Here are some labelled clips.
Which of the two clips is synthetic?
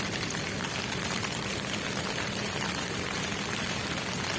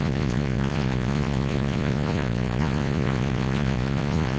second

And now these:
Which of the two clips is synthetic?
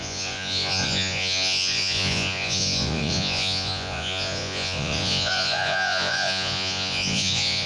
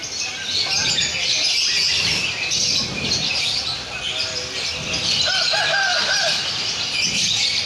first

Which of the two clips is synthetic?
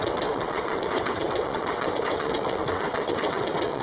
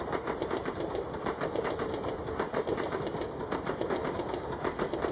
first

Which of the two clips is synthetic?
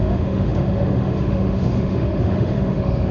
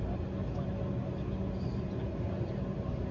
first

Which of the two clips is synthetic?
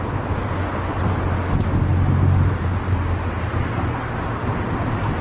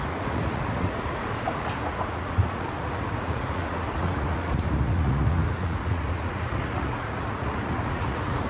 second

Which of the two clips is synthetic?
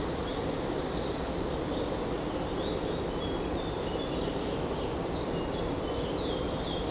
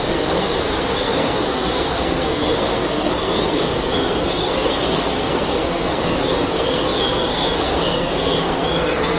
second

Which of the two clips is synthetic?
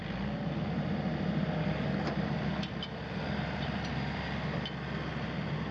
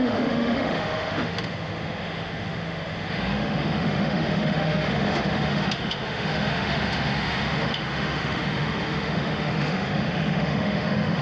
second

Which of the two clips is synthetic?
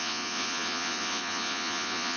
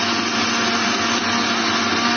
first